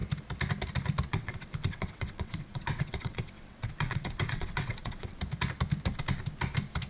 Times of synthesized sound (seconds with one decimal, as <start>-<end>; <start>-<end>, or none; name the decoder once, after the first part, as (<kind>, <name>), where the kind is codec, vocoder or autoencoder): 1.1-5.2 (vocoder, WaveNeXt)